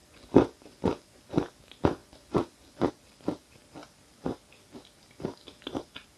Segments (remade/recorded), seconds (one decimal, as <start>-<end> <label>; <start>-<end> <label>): 0.0-1.2 remade; 1.2-2.0 recorded; 2.0-2.9 remade; 2.9-6.2 recorded